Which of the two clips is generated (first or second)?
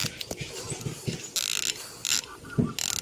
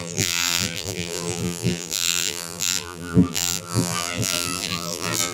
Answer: second